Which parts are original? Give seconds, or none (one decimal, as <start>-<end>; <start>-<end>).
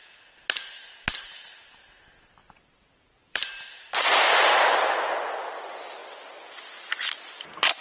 0.0-2.4; 4.3-6.0; 7.1-7.8